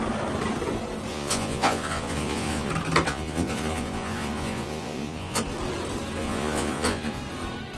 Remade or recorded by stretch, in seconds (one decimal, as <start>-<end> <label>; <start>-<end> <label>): 0.0-1.1 recorded; 1.1-2.7 remade; 2.7-3.1 recorded; 3.1-5.4 remade; 5.4-6.2 recorded; 6.2-7.2 remade; 7.2-7.8 recorded